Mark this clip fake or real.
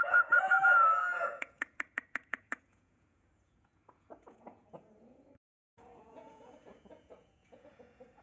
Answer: fake